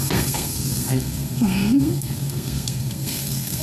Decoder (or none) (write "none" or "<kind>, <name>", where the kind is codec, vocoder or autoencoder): codec, SNAC